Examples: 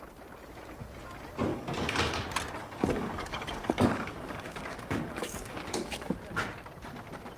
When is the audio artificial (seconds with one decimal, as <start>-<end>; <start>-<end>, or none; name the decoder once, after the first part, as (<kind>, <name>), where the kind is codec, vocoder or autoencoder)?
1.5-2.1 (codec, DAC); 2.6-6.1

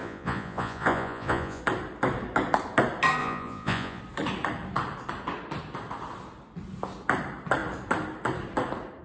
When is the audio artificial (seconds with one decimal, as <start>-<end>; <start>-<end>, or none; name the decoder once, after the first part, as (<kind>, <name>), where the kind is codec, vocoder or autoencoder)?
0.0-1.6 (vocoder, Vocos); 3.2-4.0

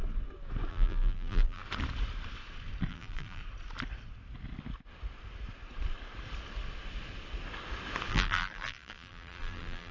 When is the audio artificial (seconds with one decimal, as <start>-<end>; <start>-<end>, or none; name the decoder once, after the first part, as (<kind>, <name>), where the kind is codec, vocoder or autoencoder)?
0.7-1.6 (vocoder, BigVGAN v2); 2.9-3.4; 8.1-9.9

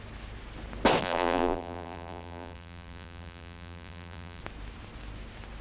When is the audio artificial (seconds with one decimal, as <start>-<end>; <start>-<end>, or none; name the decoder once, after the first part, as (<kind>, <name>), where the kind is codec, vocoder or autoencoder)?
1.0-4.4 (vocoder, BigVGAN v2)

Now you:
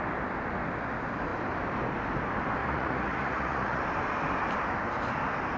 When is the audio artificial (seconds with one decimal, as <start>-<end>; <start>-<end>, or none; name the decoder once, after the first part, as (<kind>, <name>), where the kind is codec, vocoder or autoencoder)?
2.6-3.8 (vocoder, Vocos)